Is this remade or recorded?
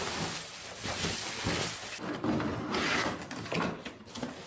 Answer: recorded